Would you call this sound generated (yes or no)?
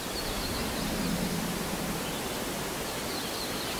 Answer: no